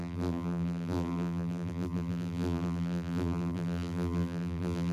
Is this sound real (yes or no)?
no